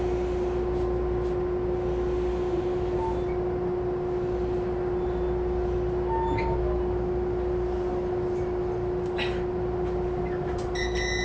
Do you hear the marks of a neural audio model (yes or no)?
no